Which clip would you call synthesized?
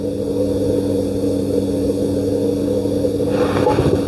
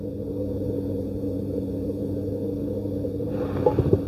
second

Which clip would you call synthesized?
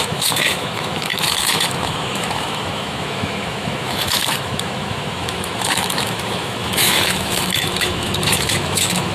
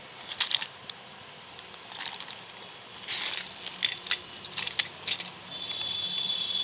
first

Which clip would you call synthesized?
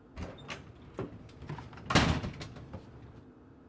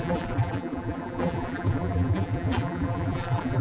second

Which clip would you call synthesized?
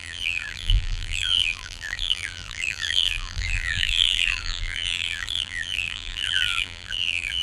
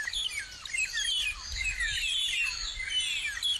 first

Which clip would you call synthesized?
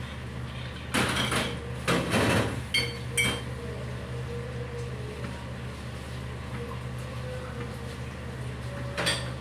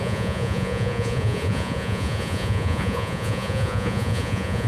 second